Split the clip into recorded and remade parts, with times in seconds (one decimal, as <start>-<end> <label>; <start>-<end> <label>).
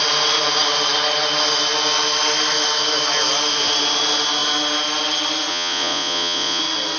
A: 0.0-5.5 recorded; 5.5-6.6 remade; 6.6-7.0 recorded